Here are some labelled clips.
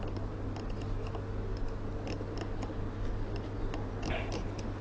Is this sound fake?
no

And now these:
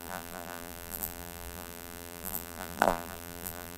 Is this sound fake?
yes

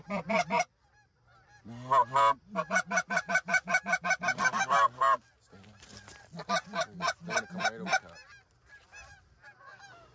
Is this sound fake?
no